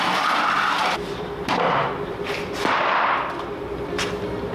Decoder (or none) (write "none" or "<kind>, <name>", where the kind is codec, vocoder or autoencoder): vocoder, BigVGAN v2